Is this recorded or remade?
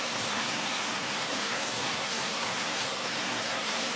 remade